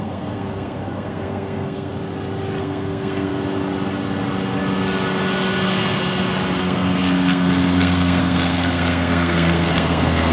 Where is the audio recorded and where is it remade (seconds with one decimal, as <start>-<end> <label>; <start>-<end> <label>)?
0.0-1.9 remade; 1.9-2.6 recorded; 2.6-3.3 remade; 3.3-6.6 recorded; 6.6-10.3 remade